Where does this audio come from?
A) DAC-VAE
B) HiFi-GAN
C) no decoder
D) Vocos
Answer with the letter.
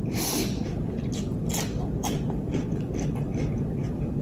C